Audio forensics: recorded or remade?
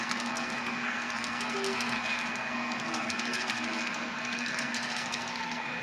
remade